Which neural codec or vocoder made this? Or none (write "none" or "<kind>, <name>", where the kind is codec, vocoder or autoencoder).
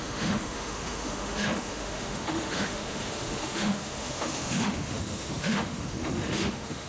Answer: autoencoder, DAC-VAE